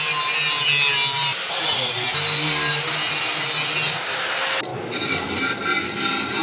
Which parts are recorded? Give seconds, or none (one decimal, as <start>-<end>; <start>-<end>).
0.0-1.2; 2.5-4.7; 5.4-6.4